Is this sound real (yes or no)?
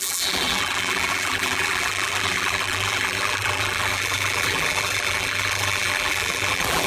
no